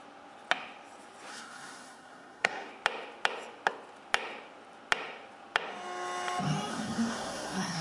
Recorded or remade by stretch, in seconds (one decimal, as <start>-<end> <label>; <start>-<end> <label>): 0.0-1.3 recorded; 1.3-2.7 remade; 2.7-6.7 recorded; 6.7-7.8 remade